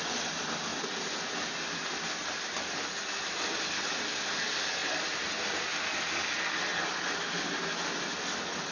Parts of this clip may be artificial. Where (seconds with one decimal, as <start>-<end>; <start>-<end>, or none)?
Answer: none